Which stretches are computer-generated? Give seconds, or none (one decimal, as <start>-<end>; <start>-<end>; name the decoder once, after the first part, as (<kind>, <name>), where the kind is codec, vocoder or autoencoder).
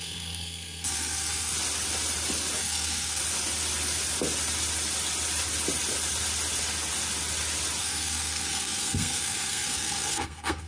0.0-1.5 (codec, SNAC); 2.6-3.2; 7.8-10.7